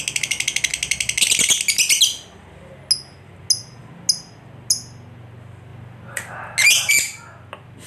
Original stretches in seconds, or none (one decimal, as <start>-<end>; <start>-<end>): 0.0-7.9